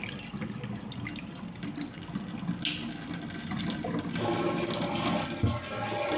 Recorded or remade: recorded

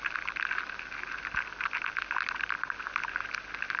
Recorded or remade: recorded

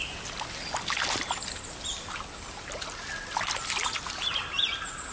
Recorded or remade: recorded